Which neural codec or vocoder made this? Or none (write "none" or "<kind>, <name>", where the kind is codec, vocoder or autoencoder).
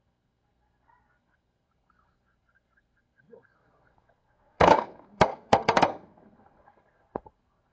codec, SNAC